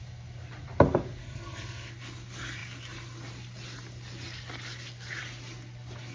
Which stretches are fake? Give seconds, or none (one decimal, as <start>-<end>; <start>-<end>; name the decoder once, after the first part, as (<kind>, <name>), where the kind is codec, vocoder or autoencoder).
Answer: 1.2-1.9 (codec, SNAC)